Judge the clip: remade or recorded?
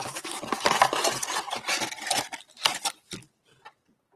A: recorded